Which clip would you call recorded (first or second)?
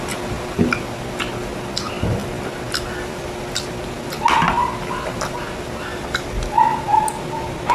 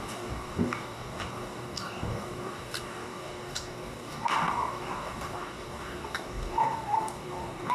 first